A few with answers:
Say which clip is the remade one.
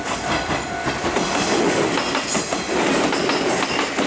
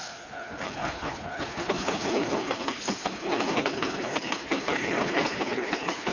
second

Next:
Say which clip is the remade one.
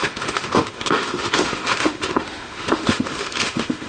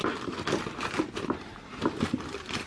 first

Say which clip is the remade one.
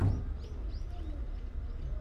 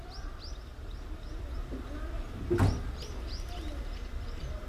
second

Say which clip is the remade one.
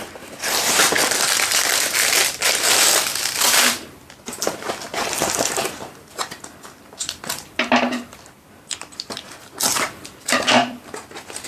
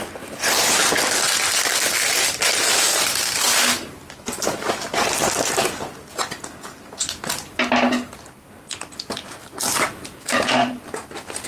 first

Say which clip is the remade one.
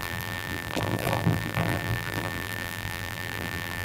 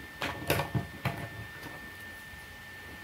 first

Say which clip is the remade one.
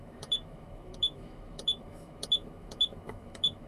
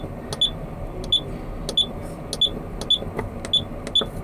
first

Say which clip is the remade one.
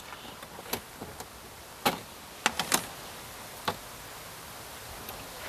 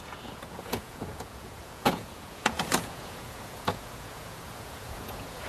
second